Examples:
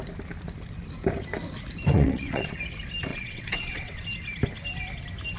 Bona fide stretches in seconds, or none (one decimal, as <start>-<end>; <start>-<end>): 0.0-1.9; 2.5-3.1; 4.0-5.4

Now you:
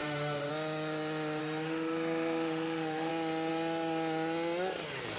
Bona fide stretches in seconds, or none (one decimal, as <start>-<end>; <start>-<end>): 0.5-1.4; 3.1-5.2

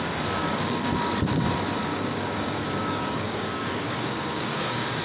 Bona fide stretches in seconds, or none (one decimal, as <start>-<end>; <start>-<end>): 0.0-0.4; 1.1-1.9

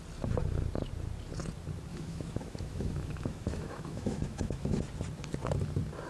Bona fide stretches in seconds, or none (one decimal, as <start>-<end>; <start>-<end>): 0.0-1.9; 4.8-6.1